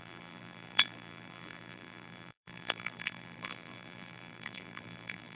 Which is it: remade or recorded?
remade